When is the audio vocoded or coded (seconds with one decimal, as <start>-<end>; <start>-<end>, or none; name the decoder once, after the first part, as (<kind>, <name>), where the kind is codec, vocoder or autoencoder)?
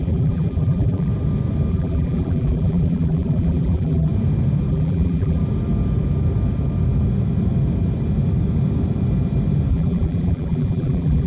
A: 0.0-1.1 (vocoder, BigVGAN v2); 1.7-4.1; 4.7-5.4; 9.7-11.3